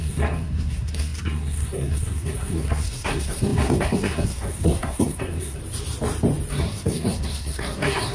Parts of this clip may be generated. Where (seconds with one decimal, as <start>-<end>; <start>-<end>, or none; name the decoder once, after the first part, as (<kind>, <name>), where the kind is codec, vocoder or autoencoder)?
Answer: 0.0-5.6 (codec, SNAC); 6.5-8.1